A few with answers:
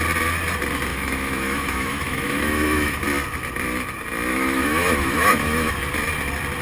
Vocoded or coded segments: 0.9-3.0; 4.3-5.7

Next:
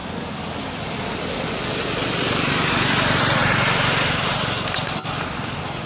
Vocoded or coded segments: 3.4-4.4

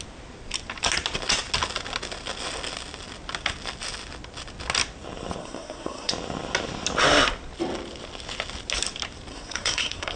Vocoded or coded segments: 5.4-6.1; 9.3-10.2

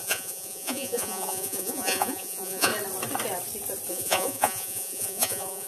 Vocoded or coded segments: 0.0-2.7; 3.9-5.7

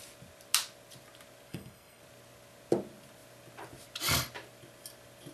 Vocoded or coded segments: 1.5-2.0

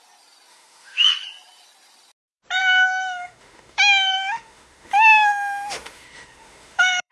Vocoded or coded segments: 0.5-1.1; 2.6-7.1

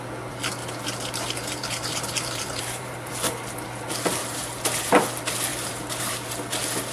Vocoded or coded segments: 0.6-3.1; 4.2-4.9; 5.5-6.3

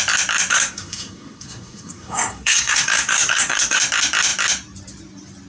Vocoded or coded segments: 0.5-3.8